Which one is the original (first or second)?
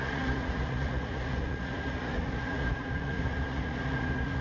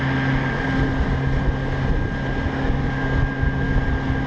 second